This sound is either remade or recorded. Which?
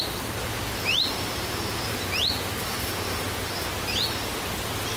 recorded